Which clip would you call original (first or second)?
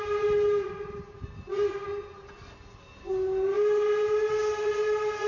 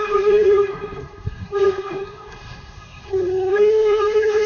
first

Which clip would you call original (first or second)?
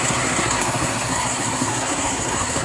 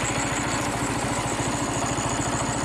second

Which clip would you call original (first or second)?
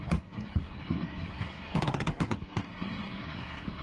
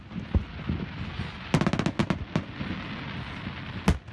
second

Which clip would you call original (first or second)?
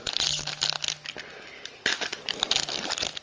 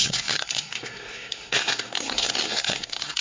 first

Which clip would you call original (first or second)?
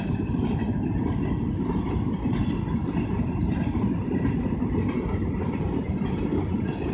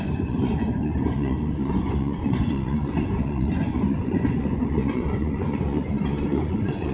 first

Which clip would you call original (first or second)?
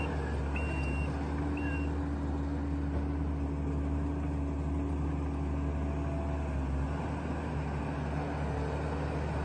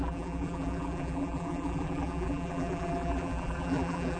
first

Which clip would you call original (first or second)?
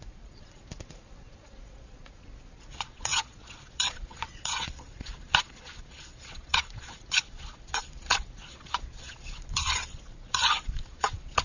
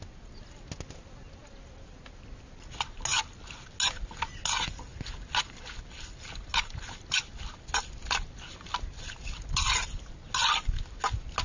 second